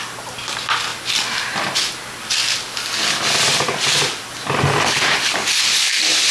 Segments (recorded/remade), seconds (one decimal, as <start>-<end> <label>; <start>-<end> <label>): 0.0-6.3 recorded